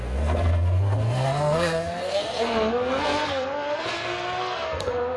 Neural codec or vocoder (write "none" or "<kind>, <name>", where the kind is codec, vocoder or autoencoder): codec, SNAC